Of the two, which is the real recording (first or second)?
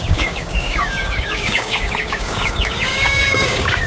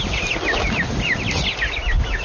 second